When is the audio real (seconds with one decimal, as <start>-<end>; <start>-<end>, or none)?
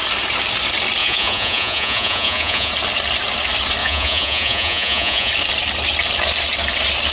0.0-1.0; 2.7-3.8; 5.3-7.1